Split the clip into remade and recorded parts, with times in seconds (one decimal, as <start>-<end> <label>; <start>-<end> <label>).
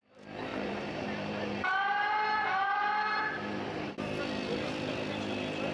0.0-0.5 recorded; 0.5-3.9 remade; 3.9-5.7 recorded